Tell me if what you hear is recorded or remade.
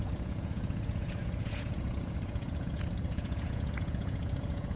remade